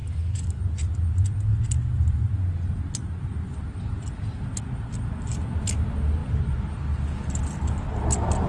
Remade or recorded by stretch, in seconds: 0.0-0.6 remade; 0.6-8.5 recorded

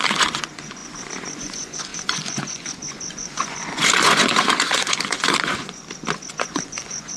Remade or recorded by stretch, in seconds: 0.0-5.8 remade; 5.8-6.3 recorded; 6.3-7.2 remade

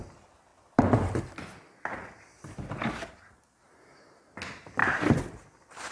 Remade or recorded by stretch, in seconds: 0.0-5.9 recorded

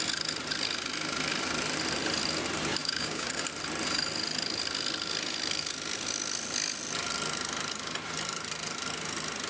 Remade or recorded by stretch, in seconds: 0.0-2.8 recorded; 2.8-3.3 remade; 3.3-9.5 recorded

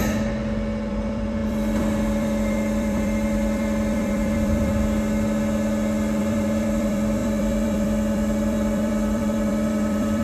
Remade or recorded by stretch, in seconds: 0.0-0.9 recorded; 0.9-4.7 remade; 4.7-6.2 recorded; 6.2-10.2 remade

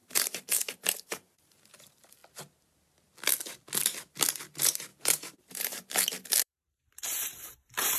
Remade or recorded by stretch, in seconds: 0.0-2.2 remade; 2.2-4.4 recorded; 4.4-8.0 remade

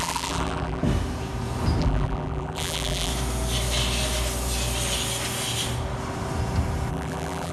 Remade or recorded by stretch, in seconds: 0.0-0.8 remade; 0.8-1.8 recorded; 1.8-3.1 remade; 3.1-6.9 recorded; 6.9-7.5 remade

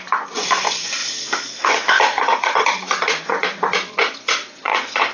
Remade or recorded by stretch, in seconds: 0.0-1.0 remade; 1.0-1.7 recorded; 1.7-5.1 remade